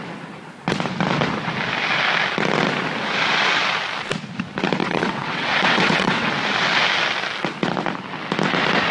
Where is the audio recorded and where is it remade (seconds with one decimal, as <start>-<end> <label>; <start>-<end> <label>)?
0.0-4.8 recorded; 4.8-6.3 remade; 6.3-8.9 recorded